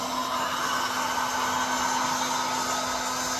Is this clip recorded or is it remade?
recorded